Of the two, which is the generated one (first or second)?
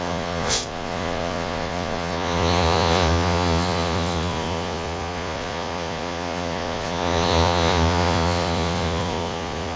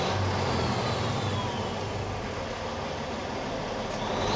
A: first